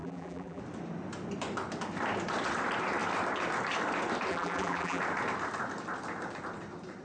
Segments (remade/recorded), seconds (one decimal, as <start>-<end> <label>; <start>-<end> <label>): 0.0-0.6 remade; 0.6-4.3 recorded; 4.3-5.0 remade; 5.0-7.0 recorded